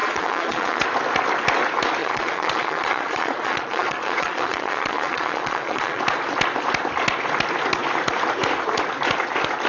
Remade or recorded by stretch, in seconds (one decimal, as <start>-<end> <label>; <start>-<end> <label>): 0.0-0.8 remade; 0.8-2.0 recorded; 2.0-6.0 remade; 6.0-9.7 recorded